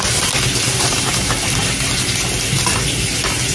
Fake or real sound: real